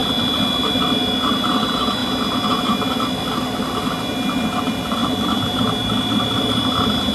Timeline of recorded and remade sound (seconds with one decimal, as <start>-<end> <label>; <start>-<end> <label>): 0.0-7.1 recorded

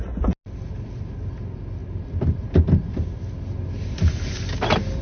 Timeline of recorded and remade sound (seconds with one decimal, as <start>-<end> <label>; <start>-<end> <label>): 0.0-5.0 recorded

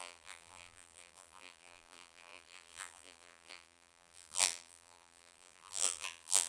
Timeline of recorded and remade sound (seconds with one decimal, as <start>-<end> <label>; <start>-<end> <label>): 0.0-6.5 remade

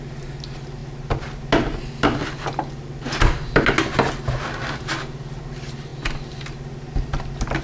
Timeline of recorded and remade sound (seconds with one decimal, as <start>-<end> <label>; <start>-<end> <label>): 0.0-7.6 recorded

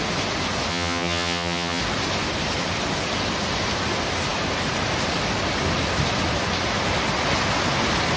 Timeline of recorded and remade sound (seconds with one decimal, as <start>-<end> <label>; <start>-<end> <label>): 0.0-0.7 recorded; 0.7-1.8 remade; 1.8-8.2 recorded